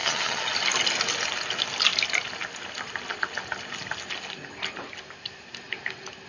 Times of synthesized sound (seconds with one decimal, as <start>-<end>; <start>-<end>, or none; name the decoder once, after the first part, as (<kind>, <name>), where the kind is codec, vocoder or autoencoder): 0.0-0.5 (vocoder, HiFi-GAN)